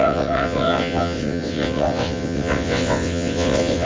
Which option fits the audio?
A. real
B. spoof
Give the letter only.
B